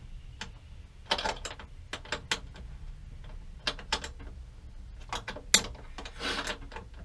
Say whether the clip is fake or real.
real